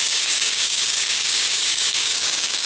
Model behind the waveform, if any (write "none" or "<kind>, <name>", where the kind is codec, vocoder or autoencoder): codec, DAC